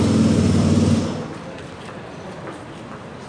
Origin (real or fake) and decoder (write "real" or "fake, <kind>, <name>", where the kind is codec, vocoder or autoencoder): fake, vocoder, BigVGAN v2